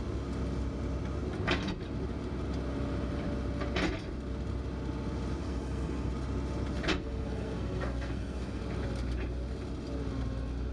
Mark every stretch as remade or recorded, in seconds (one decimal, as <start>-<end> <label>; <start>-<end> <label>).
0.0-5.4 recorded; 5.4-6.1 remade; 6.1-6.9 recorded; 6.9-8.6 remade; 8.6-10.7 recorded